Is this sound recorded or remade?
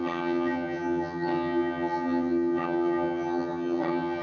remade